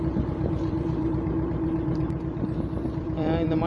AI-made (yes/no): yes